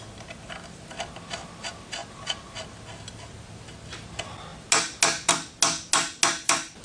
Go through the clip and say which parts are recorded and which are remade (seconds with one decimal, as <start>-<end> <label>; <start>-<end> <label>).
0.0-6.8 recorded